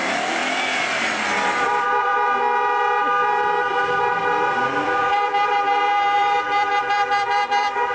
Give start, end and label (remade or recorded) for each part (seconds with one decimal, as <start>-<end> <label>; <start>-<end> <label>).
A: 0.0-0.4 remade; 0.4-1.6 recorded; 1.6-2.1 remade; 2.1-4.8 recorded; 4.8-7.9 remade